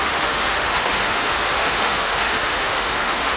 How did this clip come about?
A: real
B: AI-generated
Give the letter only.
B